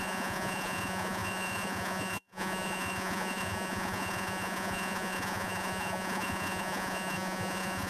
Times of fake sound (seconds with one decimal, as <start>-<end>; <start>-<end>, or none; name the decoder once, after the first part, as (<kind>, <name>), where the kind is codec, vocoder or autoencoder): 0.0-7.9 (vocoder, Vocos)